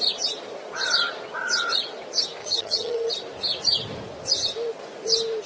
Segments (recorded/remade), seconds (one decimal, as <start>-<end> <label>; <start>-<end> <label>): 0.0-2.4 recorded; 2.4-3.1 remade; 3.1-5.5 recorded